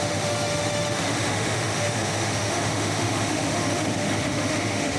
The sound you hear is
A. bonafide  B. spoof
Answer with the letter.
B